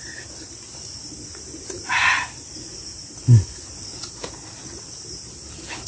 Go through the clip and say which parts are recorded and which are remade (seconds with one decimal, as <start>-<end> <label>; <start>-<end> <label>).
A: 0.0-5.9 recorded